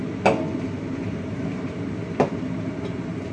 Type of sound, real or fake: fake